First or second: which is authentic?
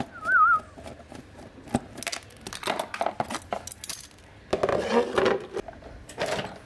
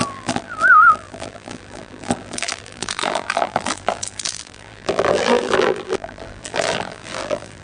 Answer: first